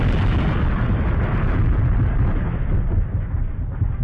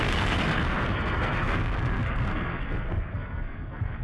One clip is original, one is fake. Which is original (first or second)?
first